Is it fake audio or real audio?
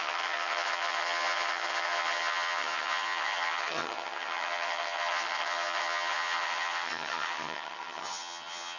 fake